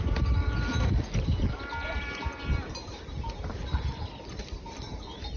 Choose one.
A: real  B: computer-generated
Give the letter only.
A